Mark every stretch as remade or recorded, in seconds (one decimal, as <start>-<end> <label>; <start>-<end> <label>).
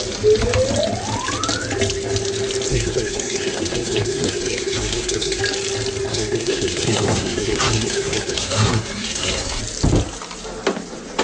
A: 0.0-2.7 recorded; 2.7-5.4 remade; 5.4-6.1 recorded; 6.1-9.6 remade; 9.6-11.2 recorded